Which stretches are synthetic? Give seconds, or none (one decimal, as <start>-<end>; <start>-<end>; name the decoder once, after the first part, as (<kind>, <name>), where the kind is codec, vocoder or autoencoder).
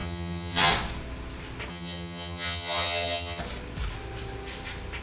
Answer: 0.0-0.7 (vocoder, HiFi-GAN); 1.7-3.4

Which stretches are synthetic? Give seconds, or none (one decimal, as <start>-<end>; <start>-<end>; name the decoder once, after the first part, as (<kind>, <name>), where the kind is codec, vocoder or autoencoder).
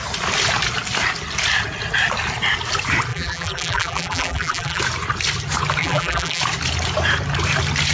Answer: 3.1-4.8 (vocoder, BigVGAN v2); 5.8-6.4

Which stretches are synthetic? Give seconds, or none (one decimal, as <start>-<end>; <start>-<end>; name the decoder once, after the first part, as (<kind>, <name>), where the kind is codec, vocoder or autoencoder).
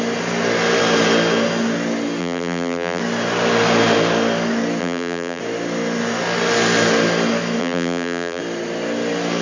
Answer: 2.2-3.0 (vocoder, BigVGAN v2); 4.8-5.4; 7.6-8.4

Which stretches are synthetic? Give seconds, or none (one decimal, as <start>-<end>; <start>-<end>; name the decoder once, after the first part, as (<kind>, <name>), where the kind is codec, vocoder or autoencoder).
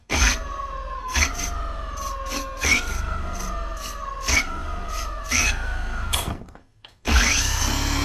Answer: 0.0-1.3 (codec, SNAC); 2.1-8.0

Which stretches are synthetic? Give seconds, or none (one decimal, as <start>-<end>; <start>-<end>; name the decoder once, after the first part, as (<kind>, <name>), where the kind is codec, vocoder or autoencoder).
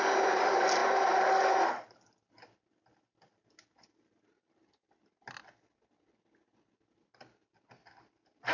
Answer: none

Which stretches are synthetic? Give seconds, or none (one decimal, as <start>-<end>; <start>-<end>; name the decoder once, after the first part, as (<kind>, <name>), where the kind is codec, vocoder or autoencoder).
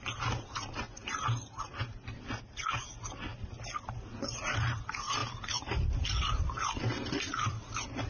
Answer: 5.2-7.6 (vocoder, BigVGAN v2)